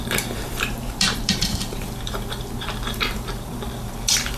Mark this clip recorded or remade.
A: remade